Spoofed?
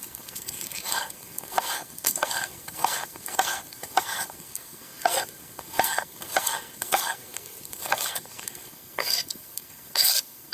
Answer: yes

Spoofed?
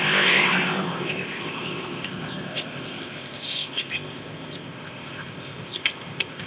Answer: yes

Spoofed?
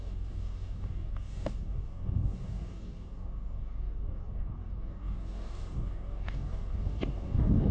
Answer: yes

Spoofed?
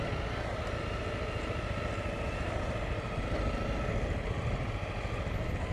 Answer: no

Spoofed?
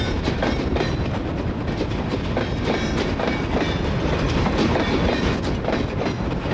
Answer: no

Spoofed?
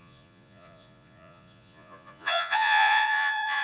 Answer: yes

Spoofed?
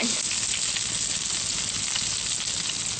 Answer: no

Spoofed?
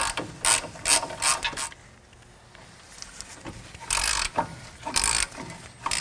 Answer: no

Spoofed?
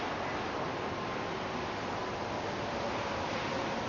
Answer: no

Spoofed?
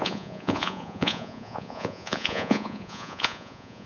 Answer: yes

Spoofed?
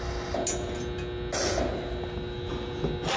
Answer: no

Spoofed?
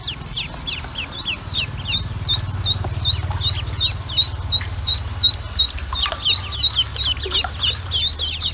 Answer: no